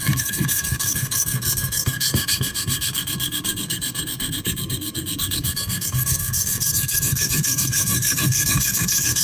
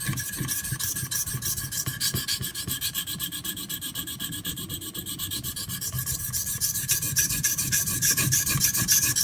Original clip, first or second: second